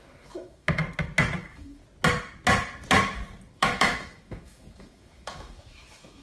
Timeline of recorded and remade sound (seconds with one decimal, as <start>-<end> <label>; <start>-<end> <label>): 0.0-0.8 remade; 0.8-1.4 recorded; 1.4-1.8 remade; 1.8-3.5 recorded; 3.5-6.2 remade